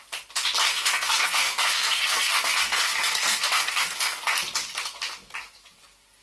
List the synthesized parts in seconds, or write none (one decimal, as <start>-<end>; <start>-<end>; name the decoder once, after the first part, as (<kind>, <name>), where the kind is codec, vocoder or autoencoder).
0.7-4.3 (codec, SNAC)